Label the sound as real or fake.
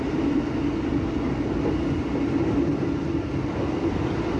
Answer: real